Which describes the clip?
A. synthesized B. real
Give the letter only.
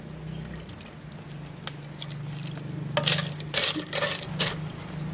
B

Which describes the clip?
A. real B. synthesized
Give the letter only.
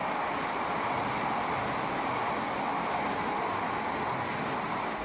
A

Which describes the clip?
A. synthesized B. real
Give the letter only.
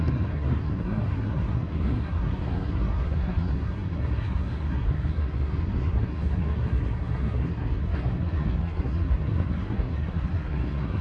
A